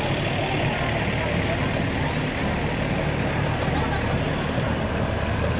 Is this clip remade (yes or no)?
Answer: no